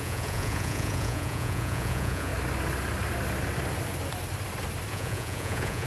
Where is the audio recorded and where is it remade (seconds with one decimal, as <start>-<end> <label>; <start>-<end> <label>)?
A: 0.0-2.3 remade; 2.3-4.9 recorded; 4.9-5.9 remade